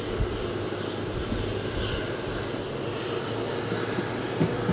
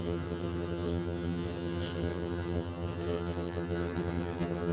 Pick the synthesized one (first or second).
second